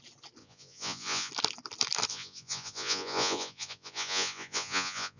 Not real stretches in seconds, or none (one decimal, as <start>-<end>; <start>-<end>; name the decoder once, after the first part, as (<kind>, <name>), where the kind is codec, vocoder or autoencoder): 0.4-1.3 (vocoder, Vocos); 2.1-5.2